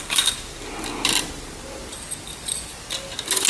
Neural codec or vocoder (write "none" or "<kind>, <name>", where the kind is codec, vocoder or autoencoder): none